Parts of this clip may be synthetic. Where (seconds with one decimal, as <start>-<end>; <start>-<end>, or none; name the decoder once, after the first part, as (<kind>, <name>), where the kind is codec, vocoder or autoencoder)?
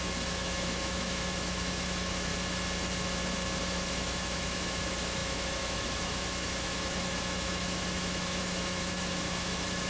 0.0-2.3 (autoencoder, DAC-VAE); 3.6-9.9